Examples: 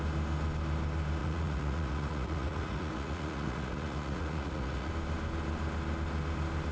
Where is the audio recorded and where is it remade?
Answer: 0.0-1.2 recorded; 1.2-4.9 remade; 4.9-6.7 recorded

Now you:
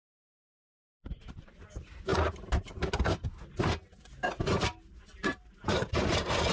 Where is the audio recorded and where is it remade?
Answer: 0.0-0.9 recorded; 0.9-1.5 remade; 1.5-4.9 recorded; 4.9-6.1 remade; 6.1-6.5 recorded

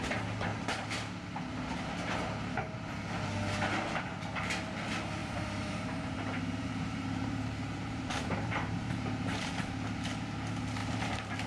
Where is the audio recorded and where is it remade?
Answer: 0.0-5.2 recorded; 5.2-9.5 remade; 9.5-10.8 recorded; 10.8-11.5 remade